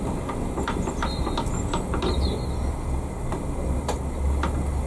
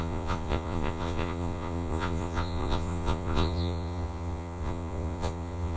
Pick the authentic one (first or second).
first